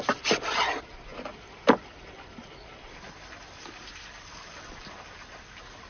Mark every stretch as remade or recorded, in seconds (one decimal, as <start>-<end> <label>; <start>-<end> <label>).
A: 0.0-1.1 recorded; 1.1-4.6 remade; 4.6-5.9 recorded

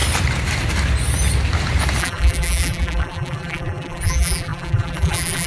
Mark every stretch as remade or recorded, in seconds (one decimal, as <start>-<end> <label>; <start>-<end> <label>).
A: 0.0-2.0 recorded; 2.0-5.5 remade

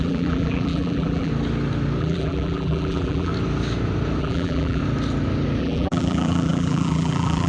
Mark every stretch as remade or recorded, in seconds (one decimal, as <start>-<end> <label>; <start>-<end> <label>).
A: 0.0-1.3 remade; 1.3-2.0 recorded; 2.0-3.3 remade; 3.3-4.2 recorded; 4.2-4.8 remade; 4.8-5.6 recorded; 5.6-7.5 remade